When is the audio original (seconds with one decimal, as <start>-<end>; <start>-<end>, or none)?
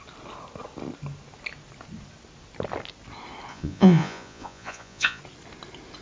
0.0-3.5; 5.2-6.0